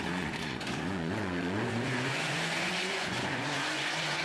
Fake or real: fake